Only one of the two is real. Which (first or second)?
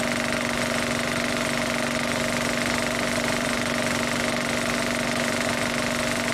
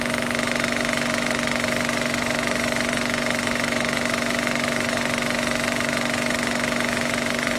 first